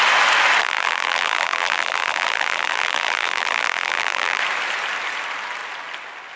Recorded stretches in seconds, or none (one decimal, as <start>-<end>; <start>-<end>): 0.0-0.6; 4.4-6.4